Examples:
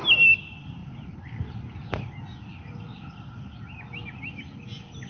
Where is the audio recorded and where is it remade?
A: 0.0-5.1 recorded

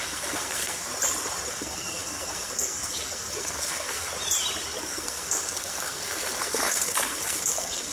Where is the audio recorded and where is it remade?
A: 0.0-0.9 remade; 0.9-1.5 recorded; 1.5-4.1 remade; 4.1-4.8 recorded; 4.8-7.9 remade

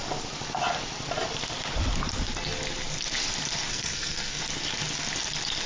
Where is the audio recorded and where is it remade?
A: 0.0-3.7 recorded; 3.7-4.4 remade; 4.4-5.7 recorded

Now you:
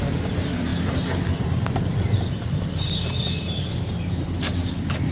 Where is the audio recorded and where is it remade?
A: 0.0-4.6 recorded; 4.6-5.1 remade